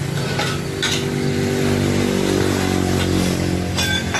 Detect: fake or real real